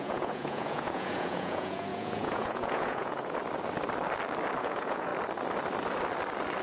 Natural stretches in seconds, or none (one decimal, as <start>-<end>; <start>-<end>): 3.4-4.6; 5.1-6.6